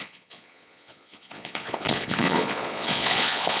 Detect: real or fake fake